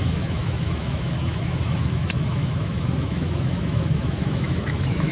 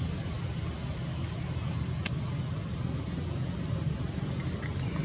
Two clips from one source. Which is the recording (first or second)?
second